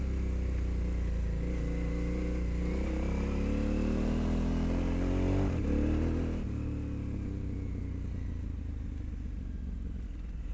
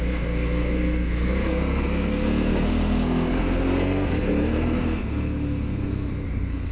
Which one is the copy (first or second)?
second